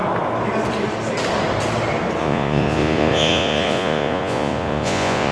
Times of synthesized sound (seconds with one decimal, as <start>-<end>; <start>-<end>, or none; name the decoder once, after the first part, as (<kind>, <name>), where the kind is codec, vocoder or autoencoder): 2.2-5.3 (vocoder, Vocos)